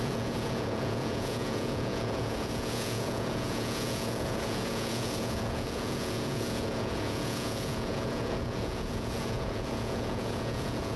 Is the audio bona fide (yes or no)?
no